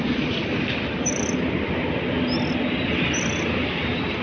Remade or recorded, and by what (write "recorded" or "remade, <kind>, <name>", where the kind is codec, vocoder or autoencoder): remade, vocoder, BigVGAN v2